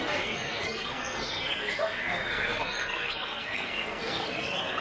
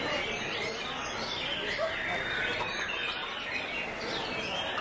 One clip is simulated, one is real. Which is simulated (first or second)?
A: first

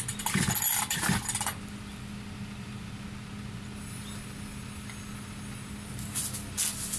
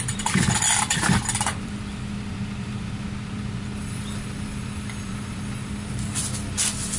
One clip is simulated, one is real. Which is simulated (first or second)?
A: second